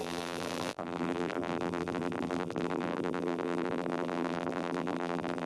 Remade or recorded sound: remade